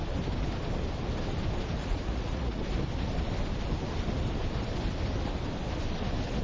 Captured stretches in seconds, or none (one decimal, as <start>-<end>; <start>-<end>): 0.0-1.8; 2.6-6.4